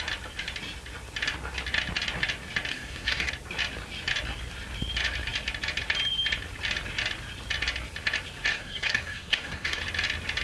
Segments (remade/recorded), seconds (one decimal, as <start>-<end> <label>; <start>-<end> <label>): 0.0-2.7 recorded; 2.7-3.3 remade; 3.3-8.5 recorded; 8.5-9.8 remade; 9.8-10.4 recorded

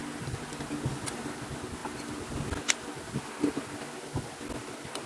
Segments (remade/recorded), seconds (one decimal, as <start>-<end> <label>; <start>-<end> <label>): 0.0-5.1 recorded

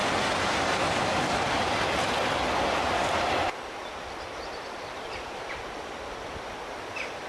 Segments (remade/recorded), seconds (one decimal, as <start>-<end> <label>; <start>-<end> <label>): 0.0-3.0 recorded; 3.0-5.6 remade; 5.6-7.3 recorded

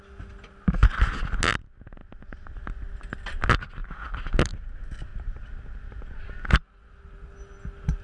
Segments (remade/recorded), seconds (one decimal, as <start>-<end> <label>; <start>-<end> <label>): 0.0-2.0 recorded; 2.0-3.0 remade; 3.0-3.8 recorded; 3.8-4.5 remade; 4.5-5.1 recorded; 5.1-6.2 remade; 6.2-8.0 recorded

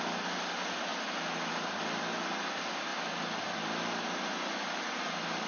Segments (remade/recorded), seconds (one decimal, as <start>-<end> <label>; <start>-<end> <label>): 0.0-5.5 recorded